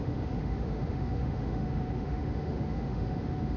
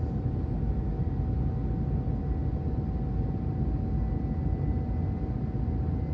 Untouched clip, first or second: second